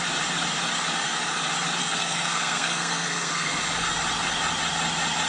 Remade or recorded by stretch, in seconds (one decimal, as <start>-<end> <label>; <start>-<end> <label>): 0.0-1.8 recorded; 1.8-3.6 remade; 3.6-5.3 recorded